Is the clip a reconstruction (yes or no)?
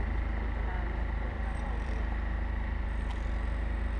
yes